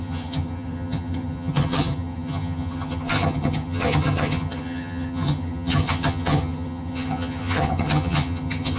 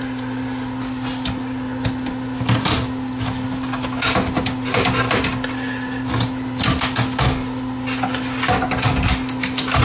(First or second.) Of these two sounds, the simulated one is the first